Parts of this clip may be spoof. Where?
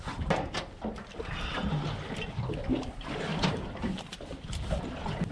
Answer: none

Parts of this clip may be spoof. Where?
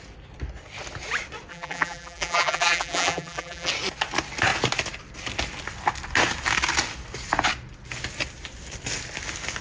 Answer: 1.5-3.7 (vocoder, BigVGAN v2)